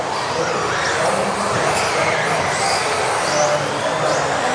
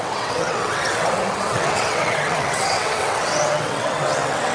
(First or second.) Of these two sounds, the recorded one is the first